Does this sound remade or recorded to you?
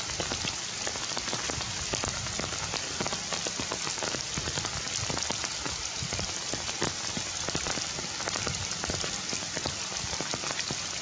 recorded